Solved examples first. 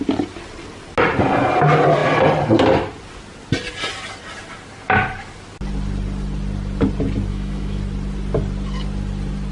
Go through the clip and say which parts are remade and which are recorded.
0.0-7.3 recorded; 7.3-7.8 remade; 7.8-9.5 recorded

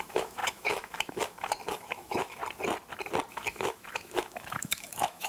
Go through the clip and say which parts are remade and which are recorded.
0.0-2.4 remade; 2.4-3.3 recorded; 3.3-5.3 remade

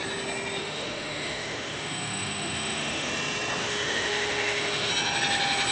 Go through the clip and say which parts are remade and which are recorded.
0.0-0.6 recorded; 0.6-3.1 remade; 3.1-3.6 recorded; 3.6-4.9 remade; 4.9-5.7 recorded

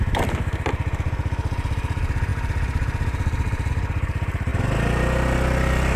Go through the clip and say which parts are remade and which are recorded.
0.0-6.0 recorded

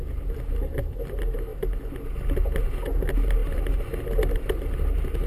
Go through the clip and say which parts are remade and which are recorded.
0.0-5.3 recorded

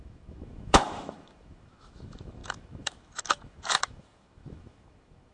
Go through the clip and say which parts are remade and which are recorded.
0.0-5.3 remade

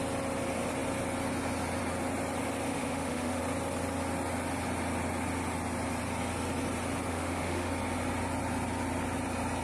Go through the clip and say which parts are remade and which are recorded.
0.0-2.7 recorded; 2.7-3.4 remade; 3.4-7.1 recorded; 7.1-7.7 remade; 7.7-9.6 recorded

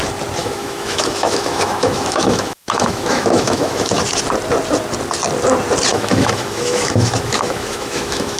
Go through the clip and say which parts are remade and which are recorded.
0.0-0.4 recorded; 0.4-4.0 remade; 4.0-5.9 recorded; 5.9-8.4 remade